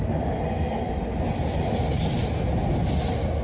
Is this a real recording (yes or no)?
yes